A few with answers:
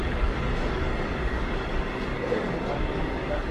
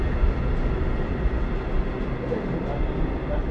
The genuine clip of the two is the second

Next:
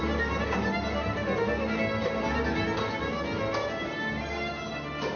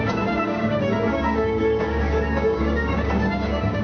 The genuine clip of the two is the first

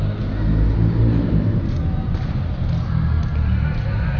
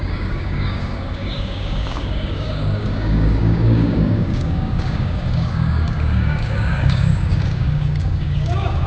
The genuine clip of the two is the first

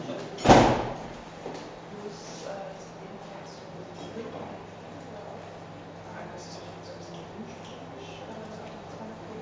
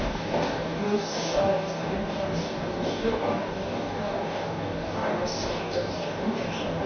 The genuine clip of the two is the first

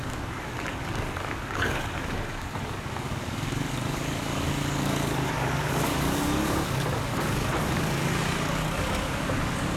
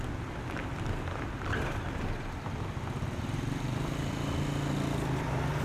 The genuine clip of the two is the second